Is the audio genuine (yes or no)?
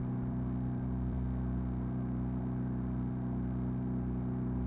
no